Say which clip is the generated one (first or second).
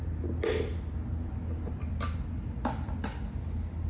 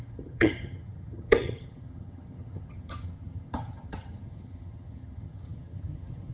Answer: second